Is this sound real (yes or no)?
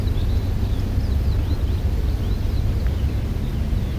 yes